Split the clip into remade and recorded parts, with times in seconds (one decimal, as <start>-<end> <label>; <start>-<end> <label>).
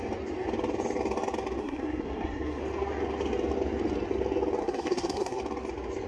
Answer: 0.0-1.6 recorded; 1.6-2.6 remade; 2.6-4.6 recorded; 4.6-5.4 remade; 5.4-6.1 recorded